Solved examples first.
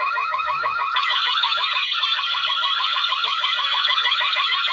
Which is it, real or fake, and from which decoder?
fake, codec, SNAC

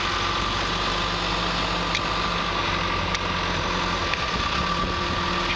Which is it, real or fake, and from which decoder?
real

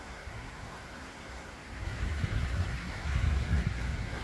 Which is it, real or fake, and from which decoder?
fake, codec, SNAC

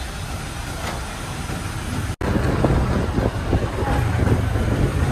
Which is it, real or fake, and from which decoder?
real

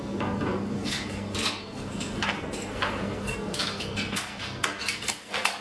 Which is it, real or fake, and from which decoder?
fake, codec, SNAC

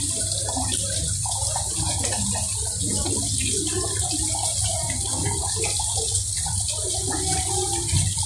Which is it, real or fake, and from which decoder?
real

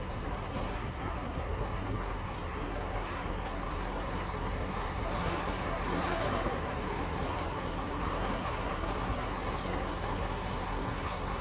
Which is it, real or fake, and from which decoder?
fake, codec, SNAC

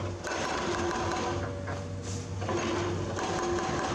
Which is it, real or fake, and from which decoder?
real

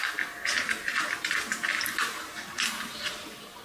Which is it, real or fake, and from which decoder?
real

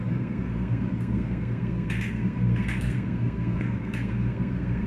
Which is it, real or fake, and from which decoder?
fake, codec, SNAC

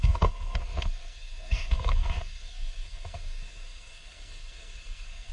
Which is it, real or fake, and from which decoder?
fake, codec, SNAC